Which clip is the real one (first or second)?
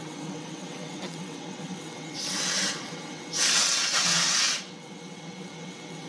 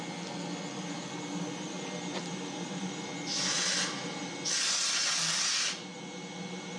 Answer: second